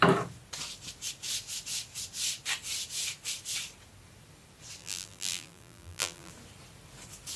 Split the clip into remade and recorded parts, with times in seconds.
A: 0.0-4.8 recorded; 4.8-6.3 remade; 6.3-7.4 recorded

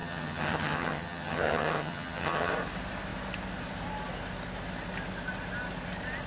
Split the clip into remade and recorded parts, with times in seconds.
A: 0.0-2.5 remade; 2.5-6.3 recorded

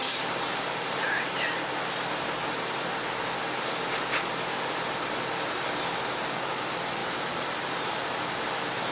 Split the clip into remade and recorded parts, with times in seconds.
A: 0.0-1.7 remade; 1.7-7.0 recorded; 7.0-8.1 remade; 8.1-8.9 recorded

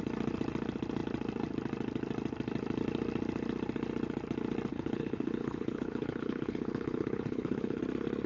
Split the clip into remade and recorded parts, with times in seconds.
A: 0.0-4.7 recorded; 4.7-7.8 remade; 7.8-8.3 recorded

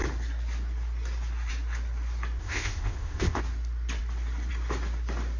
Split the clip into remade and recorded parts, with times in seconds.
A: 0.0-2.4 recorded; 2.4-3.4 remade; 3.4-5.4 recorded

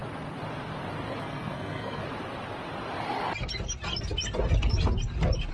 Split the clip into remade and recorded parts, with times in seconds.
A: 0.0-1.2 recorded; 1.2-2.0 remade; 2.0-5.5 recorded

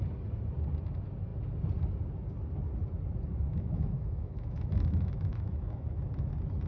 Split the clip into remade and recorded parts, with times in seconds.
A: 0.0-3.5 recorded; 3.5-6.0 remade; 6.0-6.7 recorded

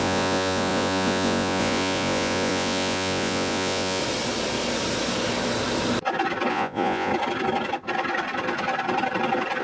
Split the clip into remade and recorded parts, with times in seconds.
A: 0.0-4.0 remade; 4.0-6.5 recorded; 6.5-7.1 remade; 7.1-9.6 recorded